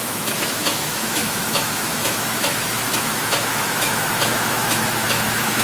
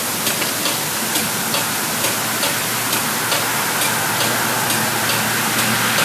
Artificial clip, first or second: first